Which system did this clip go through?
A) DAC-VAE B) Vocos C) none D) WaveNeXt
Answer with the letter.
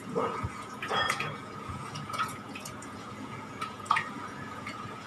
B